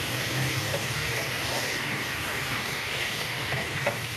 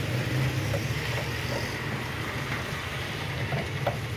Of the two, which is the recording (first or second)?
second